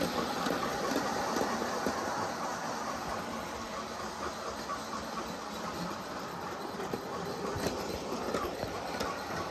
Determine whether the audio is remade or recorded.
recorded